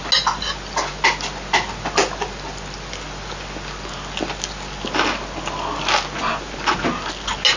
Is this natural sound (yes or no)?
yes